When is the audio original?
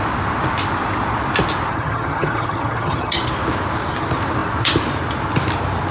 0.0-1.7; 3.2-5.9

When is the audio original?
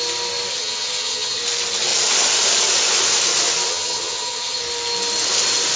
0.0-0.5; 1.4-3.7; 4.6-5.8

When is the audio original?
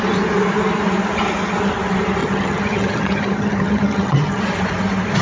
0.0-2.2; 4.4-5.2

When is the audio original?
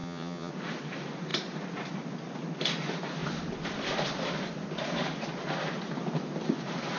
0.5-7.0